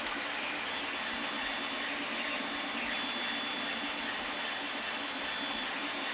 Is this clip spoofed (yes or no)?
no